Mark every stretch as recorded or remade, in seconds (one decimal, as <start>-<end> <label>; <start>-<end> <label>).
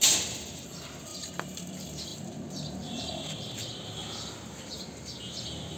0.0-1.1 recorded; 1.1-1.7 remade; 1.7-5.8 recorded